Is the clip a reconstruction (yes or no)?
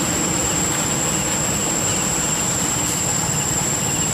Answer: yes